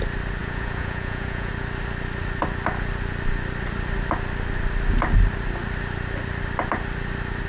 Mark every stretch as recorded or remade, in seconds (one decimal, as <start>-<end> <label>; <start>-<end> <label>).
0.0-0.4 recorded; 0.4-1.5 remade; 1.5-7.5 recorded